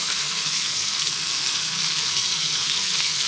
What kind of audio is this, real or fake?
fake